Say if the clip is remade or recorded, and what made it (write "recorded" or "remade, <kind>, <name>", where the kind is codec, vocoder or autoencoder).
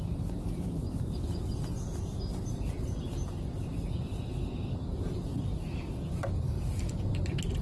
recorded